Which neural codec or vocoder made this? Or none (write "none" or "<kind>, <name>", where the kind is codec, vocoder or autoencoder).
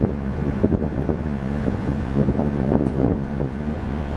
vocoder, Vocos